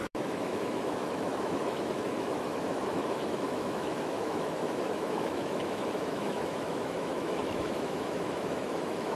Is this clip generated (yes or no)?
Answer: yes